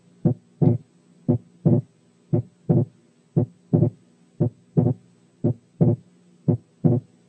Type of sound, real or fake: real